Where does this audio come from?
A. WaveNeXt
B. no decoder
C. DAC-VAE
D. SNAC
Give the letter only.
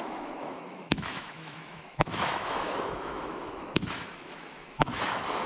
C